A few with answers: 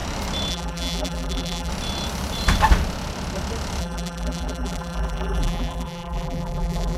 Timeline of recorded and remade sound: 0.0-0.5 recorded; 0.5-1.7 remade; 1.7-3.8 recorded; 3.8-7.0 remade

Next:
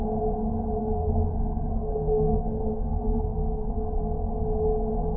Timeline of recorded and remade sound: 0.0-0.8 recorded; 0.8-3.7 remade; 3.7-5.2 recorded